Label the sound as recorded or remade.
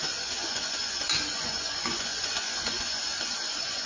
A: remade